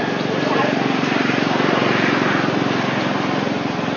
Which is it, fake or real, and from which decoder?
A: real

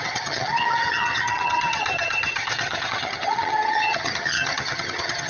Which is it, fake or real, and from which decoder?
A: fake, vocoder, HiFi-GAN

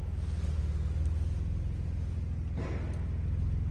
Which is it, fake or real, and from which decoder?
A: real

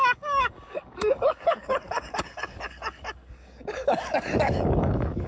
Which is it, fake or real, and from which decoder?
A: fake, codec, DAC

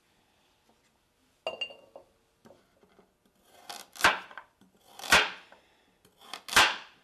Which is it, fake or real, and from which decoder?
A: real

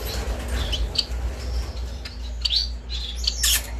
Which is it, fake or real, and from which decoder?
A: real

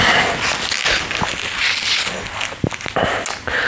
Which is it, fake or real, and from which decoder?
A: real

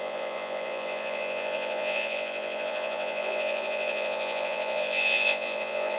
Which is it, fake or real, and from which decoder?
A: fake, vocoder, Vocos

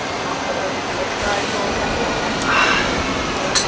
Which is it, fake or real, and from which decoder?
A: real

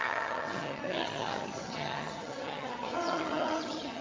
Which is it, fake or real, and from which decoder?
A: fake, vocoder, HiFi-GAN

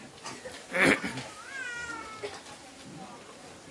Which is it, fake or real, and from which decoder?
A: real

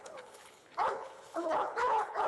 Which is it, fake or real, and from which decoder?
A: fake, codec, HILCodec